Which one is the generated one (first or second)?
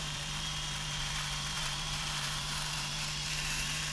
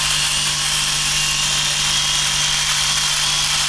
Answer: first